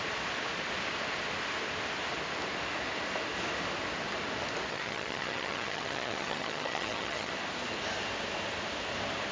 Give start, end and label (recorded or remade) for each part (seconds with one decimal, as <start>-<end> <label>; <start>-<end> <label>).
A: 0.0-4.7 recorded; 4.7-7.3 remade; 7.3-9.3 recorded